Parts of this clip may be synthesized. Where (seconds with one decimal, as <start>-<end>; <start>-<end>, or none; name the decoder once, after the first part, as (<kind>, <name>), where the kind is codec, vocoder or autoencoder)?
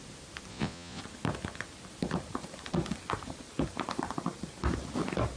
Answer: 0.5-1.0 (vocoder, Vocos)